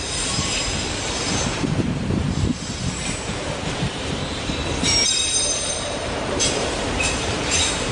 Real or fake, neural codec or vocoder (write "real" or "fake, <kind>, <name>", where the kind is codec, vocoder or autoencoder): fake, vocoder, BigVGAN v2